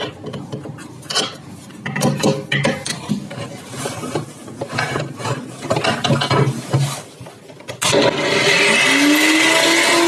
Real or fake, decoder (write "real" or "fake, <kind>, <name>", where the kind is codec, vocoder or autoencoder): real